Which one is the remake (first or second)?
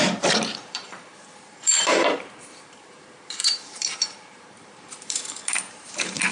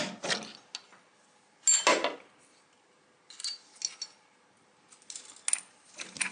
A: first